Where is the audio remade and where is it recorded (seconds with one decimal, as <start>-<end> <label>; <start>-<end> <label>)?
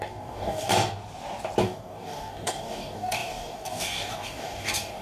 0.0-0.7 remade; 0.7-1.6 recorded; 1.6-5.0 remade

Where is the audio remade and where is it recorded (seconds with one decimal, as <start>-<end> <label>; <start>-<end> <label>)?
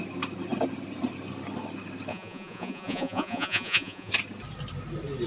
0.0-2.1 recorded; 2.1-4.1 remade; 4.1-5.3 recorded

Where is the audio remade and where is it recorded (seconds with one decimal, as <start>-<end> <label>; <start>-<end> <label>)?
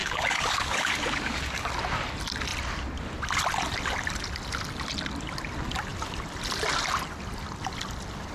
0.0-1.7 remade; 1.7-8.3 recorded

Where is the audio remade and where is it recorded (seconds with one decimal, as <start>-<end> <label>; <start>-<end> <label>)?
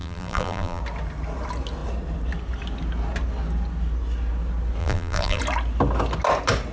0.0-0.8 remade; 0.8-4.8 recorded; 4.8-5.4 remade; 5.4-6.7 recorded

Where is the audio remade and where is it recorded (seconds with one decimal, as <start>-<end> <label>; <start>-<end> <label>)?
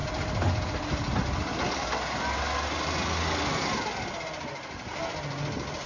0.0-5.9 recorded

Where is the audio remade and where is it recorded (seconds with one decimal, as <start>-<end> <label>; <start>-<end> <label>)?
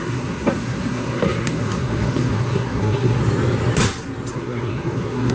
0.0-3.2 remade; 3.2-4.3 recorded; 4.3-5.3 remade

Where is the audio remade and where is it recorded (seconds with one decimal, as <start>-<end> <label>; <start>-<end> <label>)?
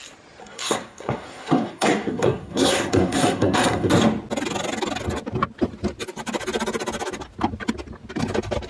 0.0-0.4 recorded; 0.4-3.9 remade; 3.9-8.7 recorded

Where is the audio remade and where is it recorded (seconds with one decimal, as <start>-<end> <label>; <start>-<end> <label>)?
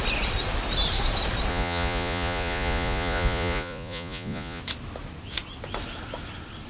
0.0-1.5 recorded; 1.5-4.6 remade; 4.6-6.7 recorded